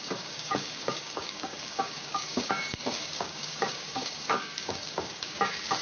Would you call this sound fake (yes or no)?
yes